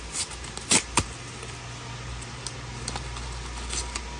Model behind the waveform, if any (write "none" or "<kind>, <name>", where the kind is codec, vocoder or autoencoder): none